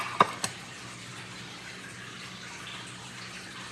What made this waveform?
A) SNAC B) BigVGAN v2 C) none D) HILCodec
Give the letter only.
C